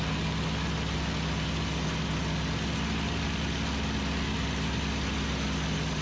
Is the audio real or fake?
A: real